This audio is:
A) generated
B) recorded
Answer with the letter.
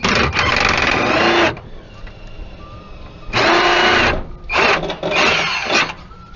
B